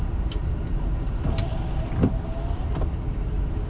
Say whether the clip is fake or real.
real